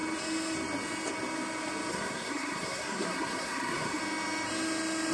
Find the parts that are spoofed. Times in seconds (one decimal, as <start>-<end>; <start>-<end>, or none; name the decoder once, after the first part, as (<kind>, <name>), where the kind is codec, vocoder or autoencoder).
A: 1.9-4.0 (codec, SNAC)